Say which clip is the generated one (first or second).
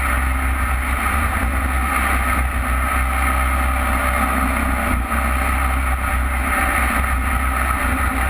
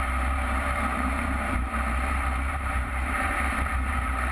second